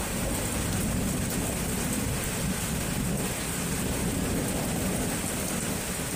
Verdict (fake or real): real